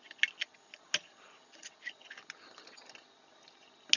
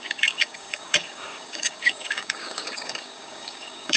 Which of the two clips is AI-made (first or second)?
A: second